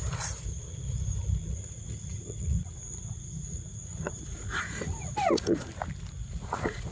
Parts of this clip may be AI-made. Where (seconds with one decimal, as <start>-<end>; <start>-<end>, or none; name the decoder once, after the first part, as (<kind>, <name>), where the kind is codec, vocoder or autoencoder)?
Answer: 1.5-5.7 (vocoder, Vocos); 6.3-6.9